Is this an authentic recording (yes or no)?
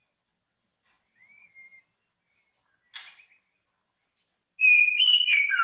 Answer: yes